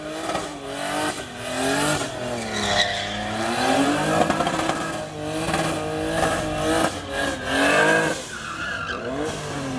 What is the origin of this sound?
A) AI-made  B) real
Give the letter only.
B